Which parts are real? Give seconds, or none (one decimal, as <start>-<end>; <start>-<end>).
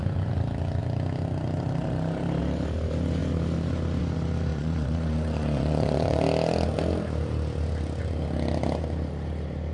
0.0-4.5; 6.2-9.7